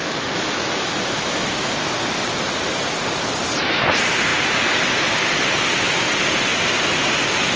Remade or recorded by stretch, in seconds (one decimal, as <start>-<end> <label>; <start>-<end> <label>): 0.0-1.7 remade; 1.7-7.6 recorded